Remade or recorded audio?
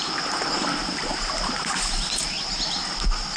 recorded